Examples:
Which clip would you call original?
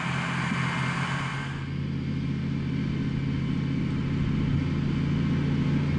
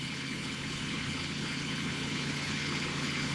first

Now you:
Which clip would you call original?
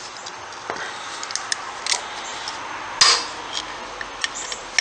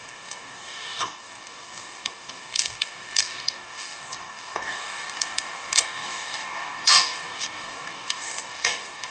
first